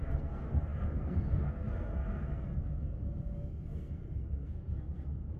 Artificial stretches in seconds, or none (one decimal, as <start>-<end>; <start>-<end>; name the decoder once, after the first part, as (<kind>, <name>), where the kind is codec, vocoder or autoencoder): 0.0-5.4 (codec, SNAC)